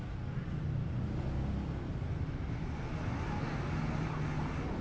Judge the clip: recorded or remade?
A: recorded